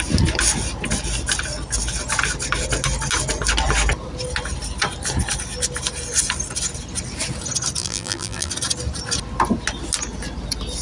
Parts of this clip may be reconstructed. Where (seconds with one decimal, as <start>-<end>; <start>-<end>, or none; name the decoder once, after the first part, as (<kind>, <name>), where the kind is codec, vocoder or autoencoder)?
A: 7.8-8.5 (vocoder, BigVGAN v2)